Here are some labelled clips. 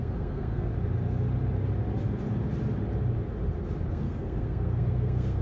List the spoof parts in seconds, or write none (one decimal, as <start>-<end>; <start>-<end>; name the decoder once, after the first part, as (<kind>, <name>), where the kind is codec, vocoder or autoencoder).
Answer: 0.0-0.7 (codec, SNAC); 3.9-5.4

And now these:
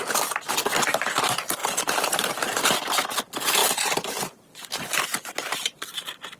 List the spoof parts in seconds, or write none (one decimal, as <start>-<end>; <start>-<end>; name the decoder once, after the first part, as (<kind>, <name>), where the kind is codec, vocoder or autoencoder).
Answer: 1.6-2.7 (vocoder, BigVGAN v2); 3.6-6.4

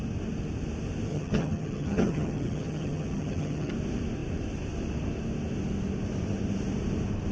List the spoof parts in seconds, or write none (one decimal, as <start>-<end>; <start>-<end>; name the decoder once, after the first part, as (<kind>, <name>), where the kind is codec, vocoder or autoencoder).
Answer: 1.1-3.7 (vocoder, HiFi-GAN)